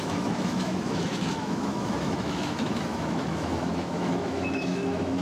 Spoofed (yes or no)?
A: yes